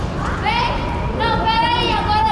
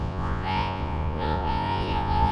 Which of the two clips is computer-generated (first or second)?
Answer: second